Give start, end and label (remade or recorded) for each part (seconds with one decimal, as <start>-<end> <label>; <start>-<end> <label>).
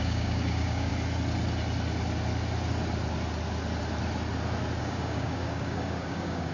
0.0-0.9 remade; 0.9-4.8 recorded; 4.8-6.5 remade